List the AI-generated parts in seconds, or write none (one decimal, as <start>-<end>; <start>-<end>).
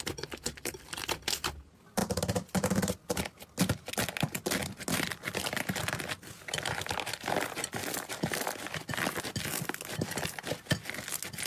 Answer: 2.0-3.2